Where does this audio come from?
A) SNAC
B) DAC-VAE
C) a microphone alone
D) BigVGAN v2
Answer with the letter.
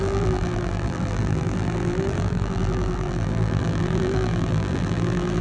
D